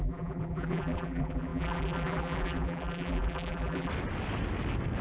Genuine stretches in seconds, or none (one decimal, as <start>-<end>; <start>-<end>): 3.9-5.0